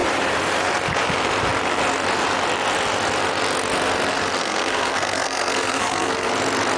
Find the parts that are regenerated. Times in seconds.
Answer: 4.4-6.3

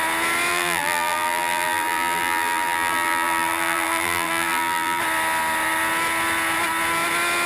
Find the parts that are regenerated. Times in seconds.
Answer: 0.5-5.0